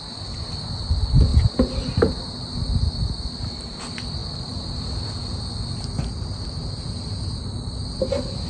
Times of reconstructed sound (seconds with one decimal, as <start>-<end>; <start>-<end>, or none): none